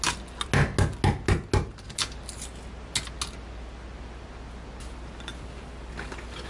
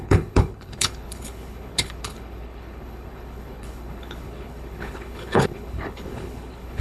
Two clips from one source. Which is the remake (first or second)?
second